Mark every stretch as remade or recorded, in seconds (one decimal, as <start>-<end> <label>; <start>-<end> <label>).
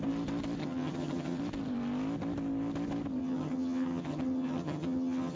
0.0-0.6 recorded; 0.6-1.4 remade; 1.4-3.2 recorded; 3.2-5.4 remade